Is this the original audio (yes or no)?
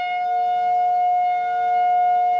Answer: yes